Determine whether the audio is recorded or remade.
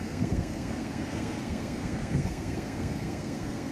remade